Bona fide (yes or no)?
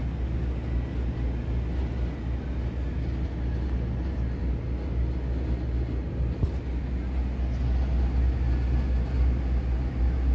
yes